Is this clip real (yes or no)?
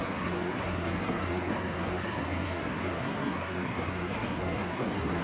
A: no